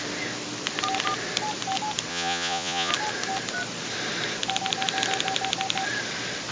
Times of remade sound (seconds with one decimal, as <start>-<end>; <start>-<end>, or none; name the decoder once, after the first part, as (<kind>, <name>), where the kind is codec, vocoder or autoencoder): 2.1-2.9 (vocoder, Vocos)